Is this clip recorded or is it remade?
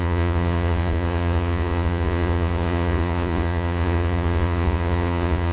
remade